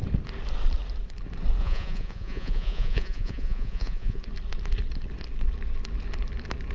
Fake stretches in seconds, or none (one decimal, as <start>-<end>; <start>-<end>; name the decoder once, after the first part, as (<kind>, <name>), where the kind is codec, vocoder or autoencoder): 1.6-4.2 (vocoder, Vocos)